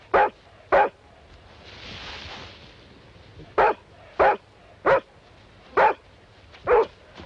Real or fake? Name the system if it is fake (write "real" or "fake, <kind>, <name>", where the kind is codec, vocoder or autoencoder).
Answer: real